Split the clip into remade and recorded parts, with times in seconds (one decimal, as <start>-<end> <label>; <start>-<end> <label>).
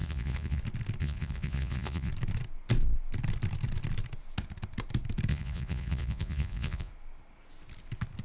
0.0-0.6 remade; 0.6-1.0 recorded; 1.0-2.1 remade; 2.1-5.3 recorded; 5.3-6.9 remade; 6.9-8.2 recorded